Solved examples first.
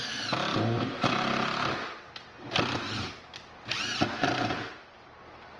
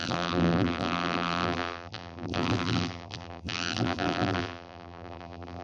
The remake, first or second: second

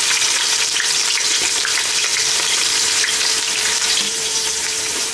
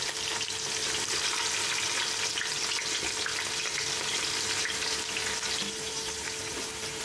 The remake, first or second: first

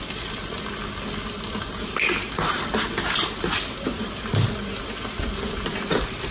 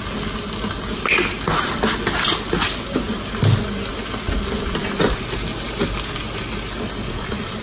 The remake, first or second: first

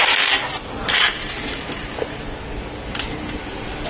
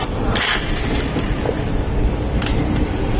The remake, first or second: second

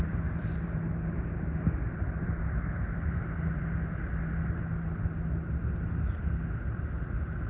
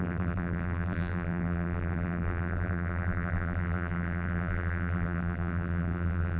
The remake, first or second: second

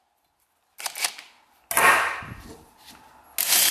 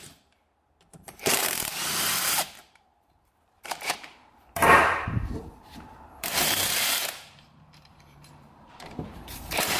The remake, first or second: second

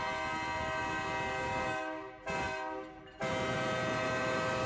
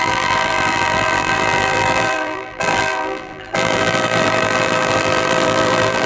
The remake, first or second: second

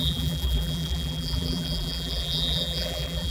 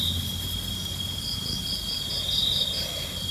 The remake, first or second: first